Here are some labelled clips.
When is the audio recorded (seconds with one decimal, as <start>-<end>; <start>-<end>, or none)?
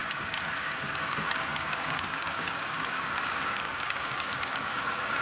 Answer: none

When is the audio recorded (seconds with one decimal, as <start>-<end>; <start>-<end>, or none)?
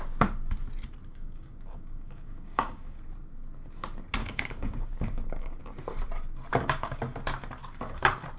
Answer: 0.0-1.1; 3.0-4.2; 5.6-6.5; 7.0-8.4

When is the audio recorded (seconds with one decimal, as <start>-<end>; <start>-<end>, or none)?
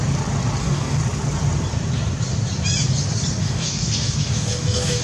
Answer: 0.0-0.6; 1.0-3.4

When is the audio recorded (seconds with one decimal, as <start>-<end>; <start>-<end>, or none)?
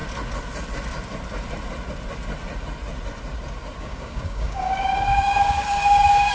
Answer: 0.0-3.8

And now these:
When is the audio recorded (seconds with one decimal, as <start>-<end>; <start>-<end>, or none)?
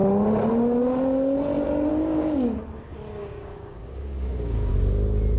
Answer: 0.0-1.9; 2.6-3.2; 4.7-5.4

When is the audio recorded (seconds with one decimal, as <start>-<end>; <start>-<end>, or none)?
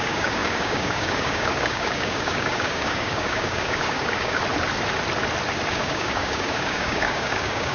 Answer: 4.4-5.7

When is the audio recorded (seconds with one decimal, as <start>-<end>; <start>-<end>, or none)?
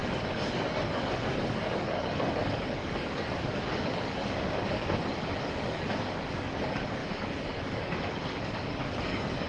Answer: none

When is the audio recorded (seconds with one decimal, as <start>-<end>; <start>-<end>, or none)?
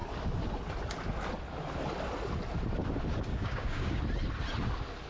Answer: 0.0-3.3; 4.0-5.1